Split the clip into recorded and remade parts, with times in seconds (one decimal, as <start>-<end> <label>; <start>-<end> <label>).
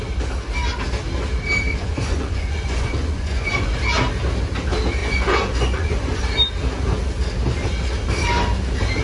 0.0-1.7 recorded; 1.7-3.8 remade; 3.8-5.0 recorded; 5.0-6.2 remade; 6.2-9.0 recorded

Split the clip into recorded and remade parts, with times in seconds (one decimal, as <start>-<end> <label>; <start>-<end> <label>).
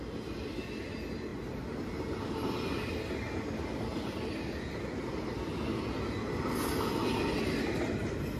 0.0-8.4 recorded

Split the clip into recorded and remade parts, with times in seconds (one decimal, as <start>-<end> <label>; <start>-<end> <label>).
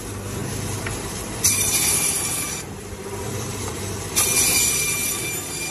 0.0-0.4 recorded; 0.4-3.8 remade; 3.8-5.7 recorded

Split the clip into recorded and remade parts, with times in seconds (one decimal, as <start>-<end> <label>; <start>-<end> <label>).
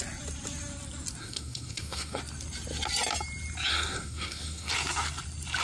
0.0-1.2 recorded; 1.2-2.2 remade; 2.2-3.7 recorded; 3.7-4.7 remade; 4.7-5.6 recorded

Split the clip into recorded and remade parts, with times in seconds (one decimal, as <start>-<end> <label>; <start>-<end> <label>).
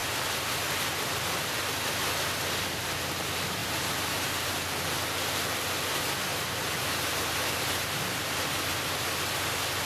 0.0-1.1 remade; 1.1-3.6 recorded; 3.6-4.3 remade; 4.3-6.3 recorded; 6.3-8.6 remade; 8.6-9.9 recorded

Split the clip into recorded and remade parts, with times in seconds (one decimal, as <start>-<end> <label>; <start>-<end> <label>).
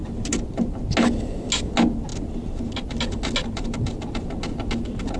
0.0-5.2 recorded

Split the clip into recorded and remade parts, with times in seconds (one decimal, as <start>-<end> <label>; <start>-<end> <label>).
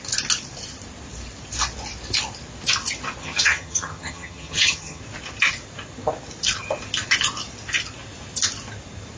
0.0-3.2 recorded; 3.2-5.0 remade; 5.0-9.2 recorded